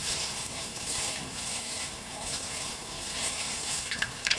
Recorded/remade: remade